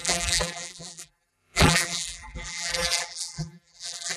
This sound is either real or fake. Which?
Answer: fake